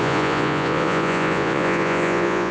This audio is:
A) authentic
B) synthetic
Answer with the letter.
B